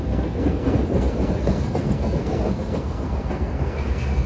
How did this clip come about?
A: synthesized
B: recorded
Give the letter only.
A